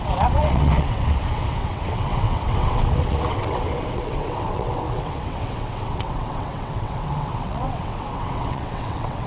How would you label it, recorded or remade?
remade